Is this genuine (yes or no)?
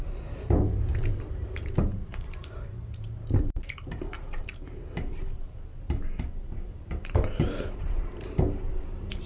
no